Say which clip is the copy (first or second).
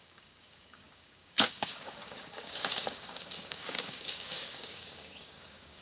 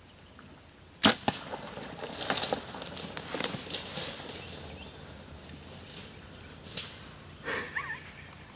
first